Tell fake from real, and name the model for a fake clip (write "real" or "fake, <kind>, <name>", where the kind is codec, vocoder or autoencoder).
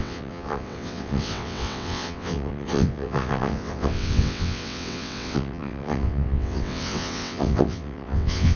fake, vocoder, WaveNeXt